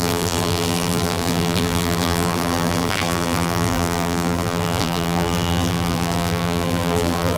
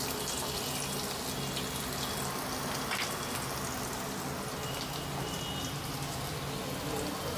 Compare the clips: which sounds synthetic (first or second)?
first